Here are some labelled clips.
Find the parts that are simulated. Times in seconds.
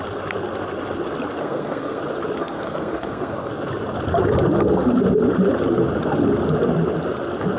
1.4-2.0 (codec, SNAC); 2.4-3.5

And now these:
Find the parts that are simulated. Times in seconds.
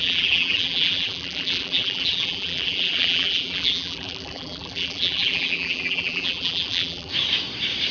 0.0-7.1 (vocoder, BigVGAN v2)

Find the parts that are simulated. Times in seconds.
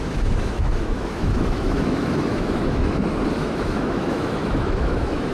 0.0-3.0 (autoencoder, DAC-VAE); 3.4-5.3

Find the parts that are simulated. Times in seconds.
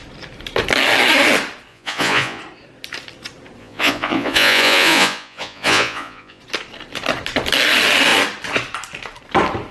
1.7-2.4 (vocoder, Vocos); 3.6-6.4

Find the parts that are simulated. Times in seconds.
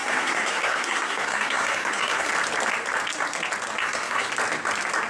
0.0-2.3 (codec, SNAC); 3.8-4.3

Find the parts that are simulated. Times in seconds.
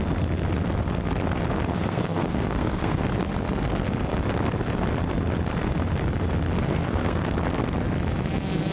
1.7-3.1 (codec, SNAC); 6.6-7.2